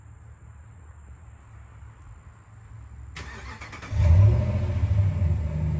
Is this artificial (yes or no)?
no